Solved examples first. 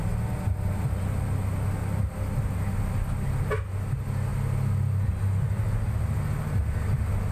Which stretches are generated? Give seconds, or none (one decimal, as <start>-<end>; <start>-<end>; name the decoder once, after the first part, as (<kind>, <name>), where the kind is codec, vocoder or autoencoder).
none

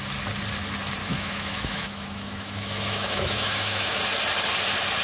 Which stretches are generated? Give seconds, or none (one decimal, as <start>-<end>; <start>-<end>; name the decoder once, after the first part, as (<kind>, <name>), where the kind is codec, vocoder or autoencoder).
1.0-4.0 (autoencoder, DAC-VAE)

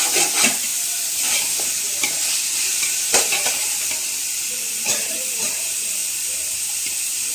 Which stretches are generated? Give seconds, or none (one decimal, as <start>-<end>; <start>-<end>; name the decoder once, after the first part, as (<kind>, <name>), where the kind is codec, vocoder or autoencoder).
6.0-7.3 (vocoder, BigVGAN v2)